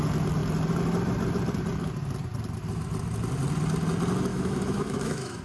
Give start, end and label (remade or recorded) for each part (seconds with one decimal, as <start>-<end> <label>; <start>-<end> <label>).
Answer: 0.0-4.3 recorded; 4.3-5.4 remade